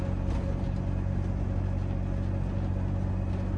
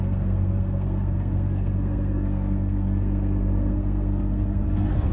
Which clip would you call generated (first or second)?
second